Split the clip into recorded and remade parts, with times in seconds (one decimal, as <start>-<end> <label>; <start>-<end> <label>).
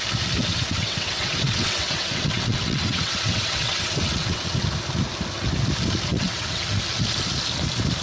0.0-0.4 recorded; 0.4-4.6 remade; 4.6-6.1 recorded; 6.1-6.6 remade; 6.6-8.0 recorded